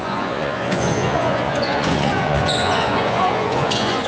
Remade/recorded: remade